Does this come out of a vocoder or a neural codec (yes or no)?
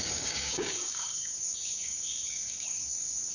yes